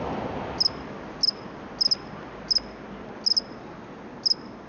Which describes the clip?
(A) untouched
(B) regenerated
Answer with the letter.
A